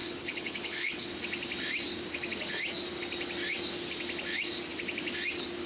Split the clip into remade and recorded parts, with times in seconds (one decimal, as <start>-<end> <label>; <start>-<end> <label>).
0.0-1.1 remade; 1.1-5.7 recorded

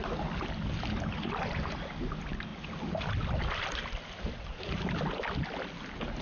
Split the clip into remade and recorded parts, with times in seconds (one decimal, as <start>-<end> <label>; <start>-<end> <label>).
0.0-2.5 recorded; 2.5-4.6 remade; 4.6-6.2 recorded

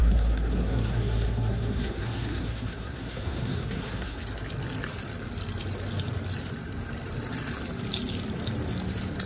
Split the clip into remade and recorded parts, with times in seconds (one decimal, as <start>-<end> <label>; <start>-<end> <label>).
0.0-4.2 remade; 4.2-9.3 recorded

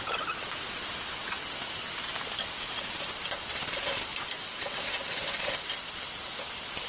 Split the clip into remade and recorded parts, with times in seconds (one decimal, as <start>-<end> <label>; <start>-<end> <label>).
0.0-1.2 remade; 1.2-5.3 recorded; 5.3-6.9 remade